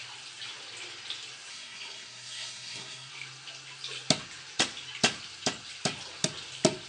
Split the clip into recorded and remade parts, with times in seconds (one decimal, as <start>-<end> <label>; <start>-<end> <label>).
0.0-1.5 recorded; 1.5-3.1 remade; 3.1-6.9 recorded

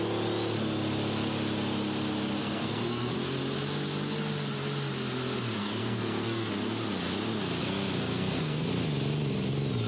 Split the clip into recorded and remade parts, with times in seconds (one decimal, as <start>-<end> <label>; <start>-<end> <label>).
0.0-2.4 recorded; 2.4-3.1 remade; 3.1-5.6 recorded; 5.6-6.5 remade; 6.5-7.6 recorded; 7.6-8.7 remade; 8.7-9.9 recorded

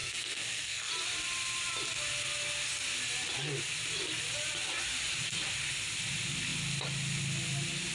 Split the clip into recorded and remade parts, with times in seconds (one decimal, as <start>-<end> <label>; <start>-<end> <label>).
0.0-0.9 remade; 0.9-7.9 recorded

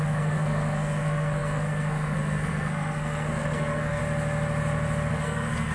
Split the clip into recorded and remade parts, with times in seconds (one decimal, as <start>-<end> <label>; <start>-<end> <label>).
0.0-4.0 remade; 4.0-5.1 recorded; 5.1-5.7 remade

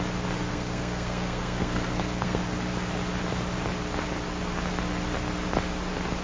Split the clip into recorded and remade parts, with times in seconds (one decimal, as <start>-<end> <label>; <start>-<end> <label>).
0.0-0.5 recorded; 0.5-2.4 remade; 2.4-6.2 recorded

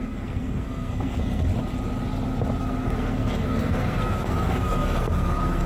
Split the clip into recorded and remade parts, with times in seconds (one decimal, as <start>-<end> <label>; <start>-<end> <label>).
0.0-1.5 remade; 1.5-2.6 recorded; 2.6-5.7 remade